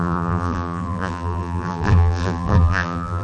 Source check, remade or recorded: remade